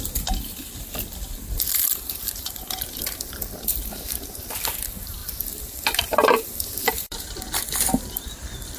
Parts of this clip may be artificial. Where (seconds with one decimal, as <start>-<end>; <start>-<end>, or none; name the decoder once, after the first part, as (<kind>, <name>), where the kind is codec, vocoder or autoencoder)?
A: 0.0-8.8 (vocoder, BigVGAN v2)